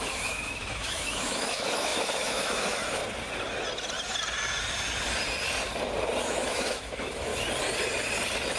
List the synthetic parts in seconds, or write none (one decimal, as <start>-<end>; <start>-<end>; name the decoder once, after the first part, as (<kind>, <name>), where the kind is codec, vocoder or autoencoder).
0.0-3.0 (autoencoder, DAC-VAE); 6.2-7.3